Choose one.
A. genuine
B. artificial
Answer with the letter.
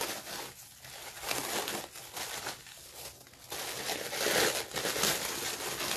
A